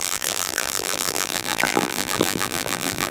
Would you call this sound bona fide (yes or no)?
no